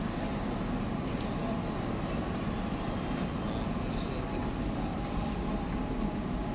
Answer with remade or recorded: recorded